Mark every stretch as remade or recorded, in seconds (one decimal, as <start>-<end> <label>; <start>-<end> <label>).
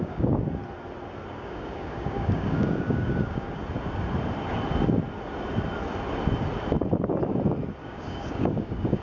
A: 0.0-0.6 remade; 0.6-1.3 recorded; 1.3-3.6 remade; 3.6-7.8 recorded; 7.8-9.0 remade